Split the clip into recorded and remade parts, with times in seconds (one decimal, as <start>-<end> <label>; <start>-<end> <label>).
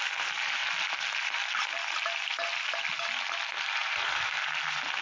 0.0-5.0 recorded